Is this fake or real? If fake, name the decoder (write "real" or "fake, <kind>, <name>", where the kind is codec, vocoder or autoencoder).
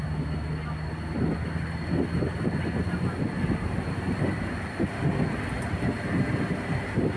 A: real